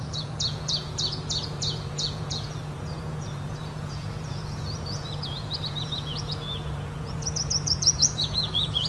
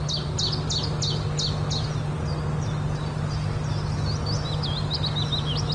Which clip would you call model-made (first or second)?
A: first